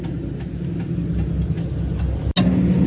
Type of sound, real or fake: real